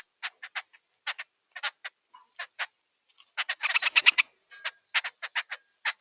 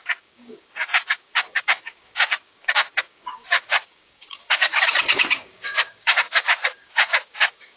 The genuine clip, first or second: first